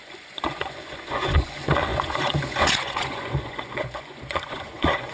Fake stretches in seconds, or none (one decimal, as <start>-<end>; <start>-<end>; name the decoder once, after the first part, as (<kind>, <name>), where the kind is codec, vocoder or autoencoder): 0.0-5.1 (vocoder, Vocos)